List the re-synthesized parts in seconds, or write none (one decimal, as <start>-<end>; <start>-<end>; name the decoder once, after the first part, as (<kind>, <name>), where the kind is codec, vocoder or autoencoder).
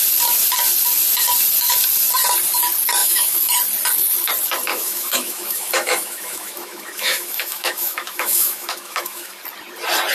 3.0-3.5 (autoencoder, DAC-VAE); 4.7-9.4